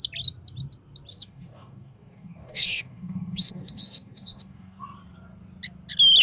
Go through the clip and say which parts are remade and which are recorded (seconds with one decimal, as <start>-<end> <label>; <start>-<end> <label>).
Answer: 0.0-1.1 recorded; 1.1-4.8 remade; 4.8-6.2 recorded